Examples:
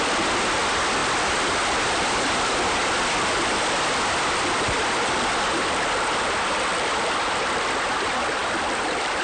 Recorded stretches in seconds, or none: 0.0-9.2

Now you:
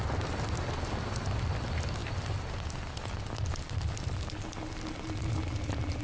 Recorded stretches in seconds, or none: 0.0-6.0

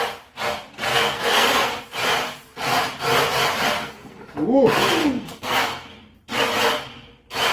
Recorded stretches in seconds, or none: 0.0-0.9; 1.8-3.8; 4.3-5.0; 5.9-7.5

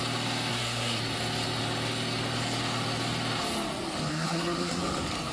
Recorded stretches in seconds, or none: 0.0-0.5; 1.0-4.1; 4.8-5.3

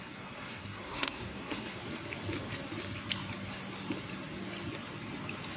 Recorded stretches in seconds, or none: 1.8-5.6